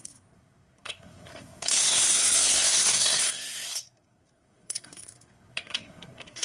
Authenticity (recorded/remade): remade